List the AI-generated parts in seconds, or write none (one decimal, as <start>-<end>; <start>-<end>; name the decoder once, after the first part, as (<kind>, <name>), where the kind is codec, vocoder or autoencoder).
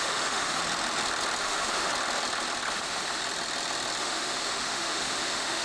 0.0-0.6 (autoencoder, DAC-VAE); 1.4-1.9; 2.7-3.2; 4.0-5.6